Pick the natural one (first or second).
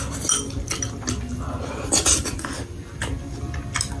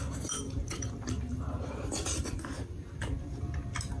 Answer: first